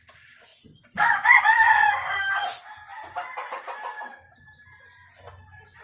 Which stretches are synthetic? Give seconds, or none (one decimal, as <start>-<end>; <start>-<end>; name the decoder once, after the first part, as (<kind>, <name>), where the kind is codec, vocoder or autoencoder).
none